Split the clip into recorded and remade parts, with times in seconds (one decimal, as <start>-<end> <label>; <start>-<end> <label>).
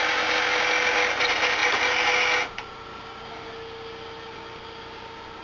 0.0-5.4 recorded